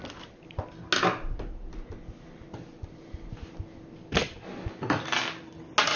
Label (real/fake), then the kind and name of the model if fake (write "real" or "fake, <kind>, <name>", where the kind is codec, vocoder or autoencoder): real